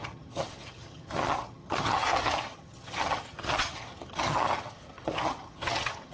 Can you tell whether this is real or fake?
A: fake